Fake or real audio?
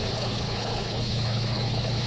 fake